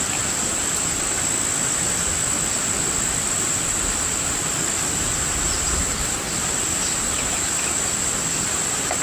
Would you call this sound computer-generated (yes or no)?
yes